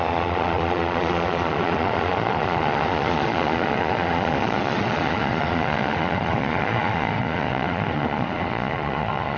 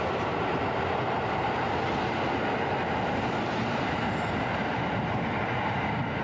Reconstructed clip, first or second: first